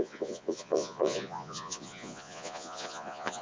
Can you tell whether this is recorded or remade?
remade